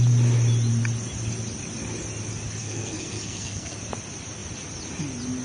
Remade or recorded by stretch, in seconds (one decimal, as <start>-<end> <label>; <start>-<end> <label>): 0.0-2.6 recorded; 2.6-3.7 remade; 3.7-5.4 recorded